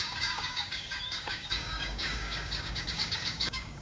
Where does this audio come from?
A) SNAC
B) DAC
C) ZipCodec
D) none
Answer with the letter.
B